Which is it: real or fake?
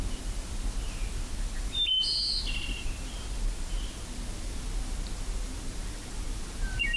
real